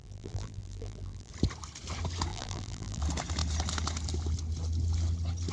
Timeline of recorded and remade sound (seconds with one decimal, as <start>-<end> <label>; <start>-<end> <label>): 0.0-1.3 remade; 1.3-2.3 recorded; 2.3-3.0 remade; 3.0-5.5 recorded